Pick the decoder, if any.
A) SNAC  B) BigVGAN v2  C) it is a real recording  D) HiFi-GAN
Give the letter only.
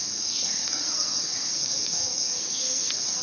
A